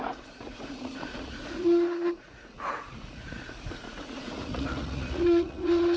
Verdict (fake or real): fake